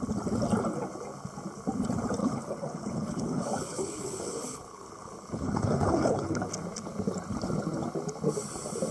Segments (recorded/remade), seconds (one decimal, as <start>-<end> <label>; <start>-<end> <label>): 0.0-2.2 recorded; 2.2-6.5 remade; 6.5-8.9 recorded